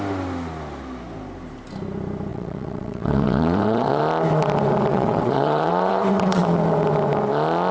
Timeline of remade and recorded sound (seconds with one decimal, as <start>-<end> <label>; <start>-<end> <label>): 0.0-2.3 recorded; 2.3-4.0 remade; 4.0-4.9 recorded; 4.9-6.4 remade; 6.4-7.7 recorded